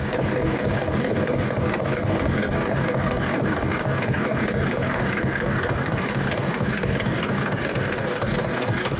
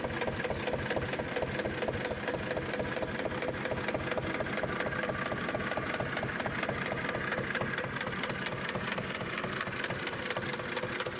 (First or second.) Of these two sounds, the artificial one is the first